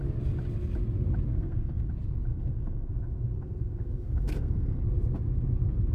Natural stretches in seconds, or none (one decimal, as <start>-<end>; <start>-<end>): 0.0-1.3; 1.9-2.3; 4.8-5.9